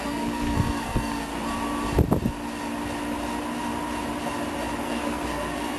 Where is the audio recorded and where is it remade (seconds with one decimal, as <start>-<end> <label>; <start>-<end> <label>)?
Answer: 0.0-1.3 remade; 1.3-4.8 recorded; 4.8-5.8 remade